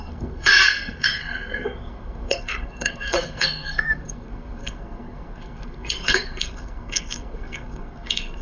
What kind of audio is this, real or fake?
fake